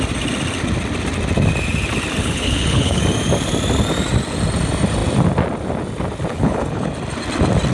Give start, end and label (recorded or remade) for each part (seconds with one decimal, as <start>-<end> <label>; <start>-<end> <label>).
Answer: 0.0-2.2 recorded; 2.2-3.0 remade; 3.0-6.3 recorded; 6.3-6.9 remade; 6.9-7.7 recorded